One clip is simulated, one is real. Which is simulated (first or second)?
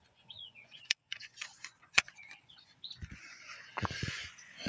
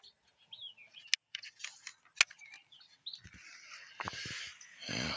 first